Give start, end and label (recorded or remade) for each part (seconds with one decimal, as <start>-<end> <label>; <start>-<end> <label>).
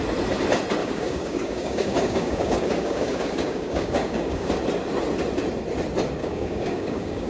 0.0-0.8 recorded; 0.8-4.5 remade; 4.5-6.2 recorded; 6.2-7.3 remade